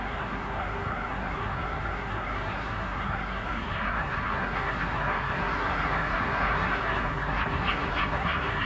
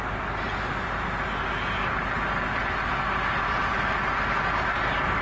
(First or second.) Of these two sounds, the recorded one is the second